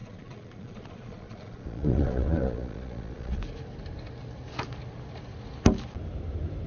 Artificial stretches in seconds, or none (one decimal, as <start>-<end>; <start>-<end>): 0.0-3.4